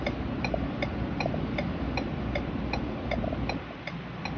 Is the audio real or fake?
real